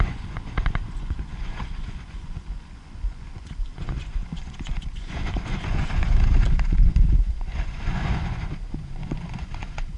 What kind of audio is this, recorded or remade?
remade